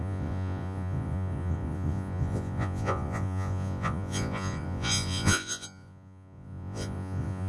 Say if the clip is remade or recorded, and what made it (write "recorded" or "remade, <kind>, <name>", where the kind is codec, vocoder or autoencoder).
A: remade, vocoder, Vocos